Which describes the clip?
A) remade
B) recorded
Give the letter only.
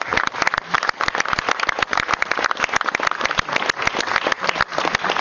B